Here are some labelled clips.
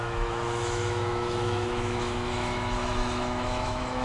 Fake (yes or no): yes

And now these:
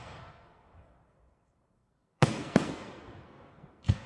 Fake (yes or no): yes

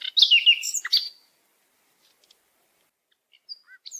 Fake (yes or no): no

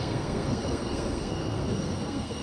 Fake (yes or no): yes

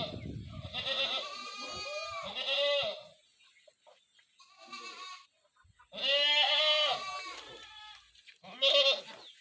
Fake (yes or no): no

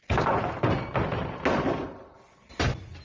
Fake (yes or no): no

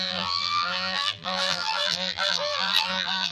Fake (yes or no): yes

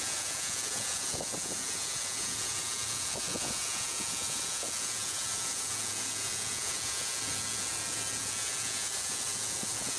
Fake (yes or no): yes